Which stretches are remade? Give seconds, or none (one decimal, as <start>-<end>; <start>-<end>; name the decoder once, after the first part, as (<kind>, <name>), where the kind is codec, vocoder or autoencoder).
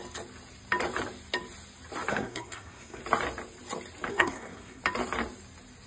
2.1-3.0 (codec, SNAC); 4.1-4.8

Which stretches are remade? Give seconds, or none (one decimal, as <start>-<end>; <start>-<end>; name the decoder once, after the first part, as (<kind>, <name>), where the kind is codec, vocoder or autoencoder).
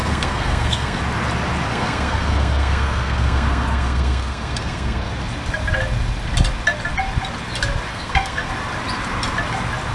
0.0-1.0 (codec, SNAC); 1.7-5.1; 7.9-8.5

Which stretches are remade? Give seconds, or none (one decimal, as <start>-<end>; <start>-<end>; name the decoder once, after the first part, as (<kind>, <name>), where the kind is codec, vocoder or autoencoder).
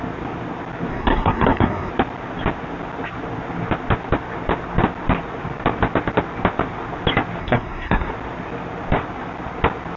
0.9-1.9 (codec, SNAC); 7.4-8.1